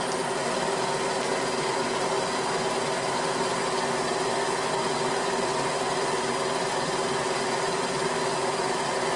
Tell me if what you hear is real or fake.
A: real